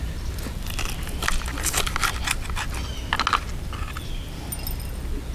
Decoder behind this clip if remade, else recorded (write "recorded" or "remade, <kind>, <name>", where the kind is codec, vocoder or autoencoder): recorded